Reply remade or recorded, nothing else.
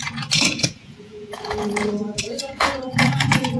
remade